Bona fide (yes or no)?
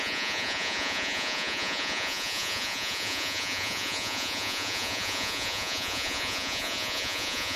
no